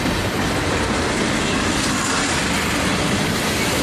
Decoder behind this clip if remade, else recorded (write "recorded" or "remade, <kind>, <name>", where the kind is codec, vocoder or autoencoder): recorded